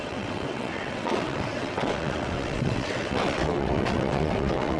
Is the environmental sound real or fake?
fake